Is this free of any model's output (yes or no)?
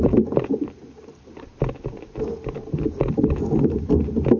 yes